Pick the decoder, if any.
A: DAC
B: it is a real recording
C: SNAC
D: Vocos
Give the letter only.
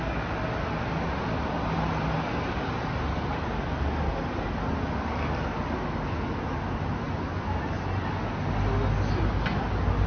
B